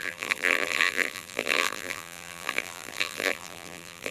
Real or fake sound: fake